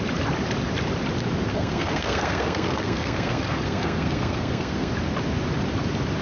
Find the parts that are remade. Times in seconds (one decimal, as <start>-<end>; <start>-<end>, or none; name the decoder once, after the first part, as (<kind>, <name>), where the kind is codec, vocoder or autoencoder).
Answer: 1.5-4.9 (codec, SNAC)